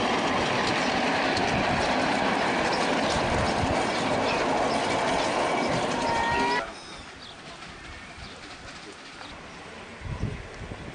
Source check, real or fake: real